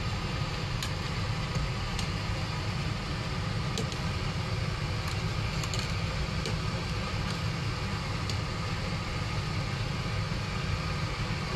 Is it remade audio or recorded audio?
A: recorded